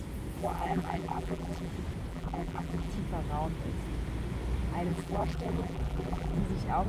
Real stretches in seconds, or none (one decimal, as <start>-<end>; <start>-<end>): 0.0-0.4; 1.7-2.1; 2.9-4.9; 6.4-6.9